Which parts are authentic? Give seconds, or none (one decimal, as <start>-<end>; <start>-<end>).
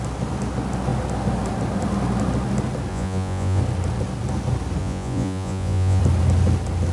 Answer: 0.0-2.9; 3.6-4.8; 6.0-6.9